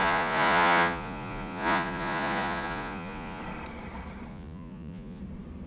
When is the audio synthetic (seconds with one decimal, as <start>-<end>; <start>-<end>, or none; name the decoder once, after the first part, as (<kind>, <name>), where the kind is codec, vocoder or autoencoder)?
0.0-3.4 (vocoder, Vocos); 4.3-5.2